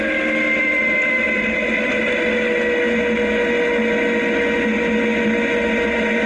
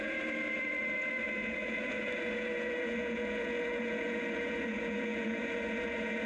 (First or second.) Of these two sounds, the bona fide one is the first